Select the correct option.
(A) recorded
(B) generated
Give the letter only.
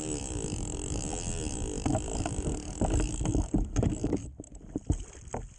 A